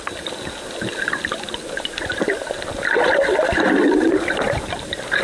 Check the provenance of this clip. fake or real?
real